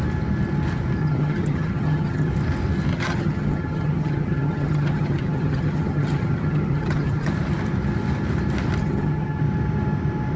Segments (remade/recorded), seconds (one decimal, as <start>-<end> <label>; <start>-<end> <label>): 0.0-1.0 recorded; 1.0-2.3 remade; 2.3-2.9 recorded; 2.9-7.3 remade; 7.3-8.8 recorded; 8.8-9.4 remade; 9.4-10.4 recorded